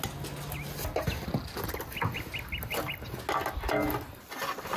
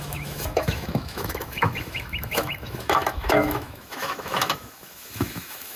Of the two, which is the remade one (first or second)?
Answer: second